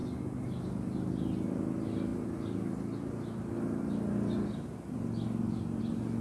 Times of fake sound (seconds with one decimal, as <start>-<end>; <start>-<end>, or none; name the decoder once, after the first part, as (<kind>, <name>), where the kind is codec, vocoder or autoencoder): none